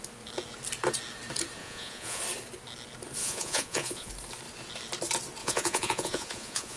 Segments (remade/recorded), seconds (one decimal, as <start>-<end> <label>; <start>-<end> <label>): 0.0-1.6 recorded; 1.6-2.2 remade; 2.2-3.2 recorded; 3.2-4.1 remade; 4.1-5.4 recorded; 5.4-6.8 remade